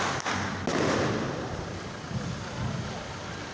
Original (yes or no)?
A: yes